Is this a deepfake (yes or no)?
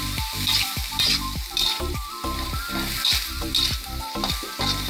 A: yes